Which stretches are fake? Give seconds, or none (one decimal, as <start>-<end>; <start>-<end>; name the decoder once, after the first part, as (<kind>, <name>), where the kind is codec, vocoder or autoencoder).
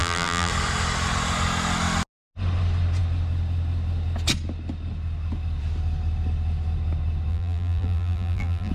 0.0-0.5 (vocoder, BigVGAN v2); 7.3-8.7